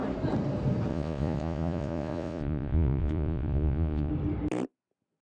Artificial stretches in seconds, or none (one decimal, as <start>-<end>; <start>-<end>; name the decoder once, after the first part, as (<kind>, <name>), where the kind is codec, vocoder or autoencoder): 0.9-4.1 (vocoder, Vocos)